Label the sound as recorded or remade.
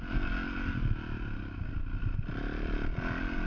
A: recorded